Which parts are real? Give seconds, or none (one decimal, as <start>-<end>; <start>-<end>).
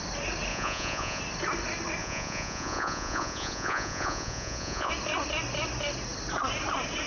0.0-0.5; 1.2-2.0; 4.9-7.1